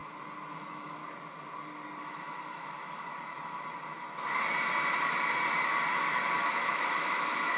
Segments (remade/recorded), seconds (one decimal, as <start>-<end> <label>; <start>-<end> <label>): 0.0-0.5 recorded; 0.5-1.0 remade; 1.0-2.0 recorded; 2.0-3.1 remade; 3.1-6.4 recorded; 6.4-7.6 remade

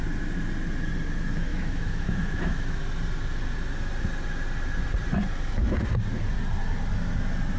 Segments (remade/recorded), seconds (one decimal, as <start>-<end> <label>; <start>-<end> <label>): 0.0-1.5 recorded; 1.5-2.8 remade; 2.8-7.6 recorded